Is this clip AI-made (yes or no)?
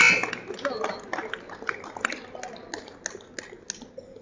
no